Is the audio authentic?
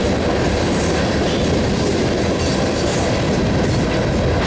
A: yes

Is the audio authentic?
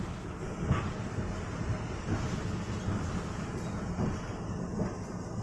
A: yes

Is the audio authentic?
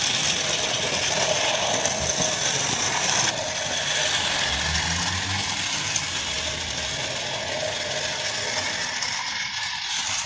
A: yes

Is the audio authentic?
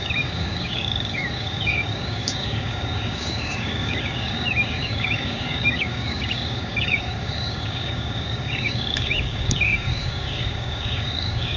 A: no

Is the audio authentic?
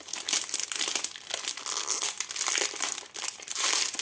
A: yes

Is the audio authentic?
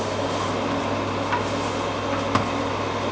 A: yes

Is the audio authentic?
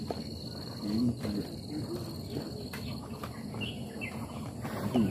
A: yes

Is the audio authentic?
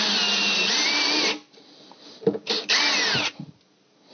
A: yes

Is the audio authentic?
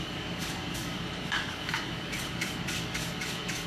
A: no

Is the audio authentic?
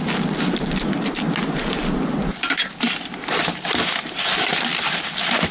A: yes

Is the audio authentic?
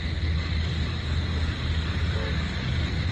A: yes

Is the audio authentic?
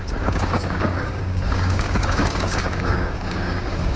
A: no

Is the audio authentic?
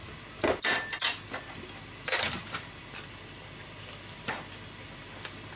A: yes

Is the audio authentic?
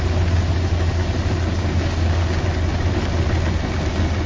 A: yes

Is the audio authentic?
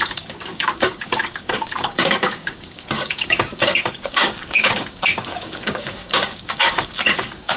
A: no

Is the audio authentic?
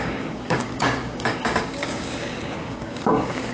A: no